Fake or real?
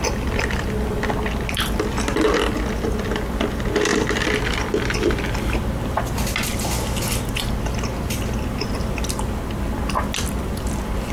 real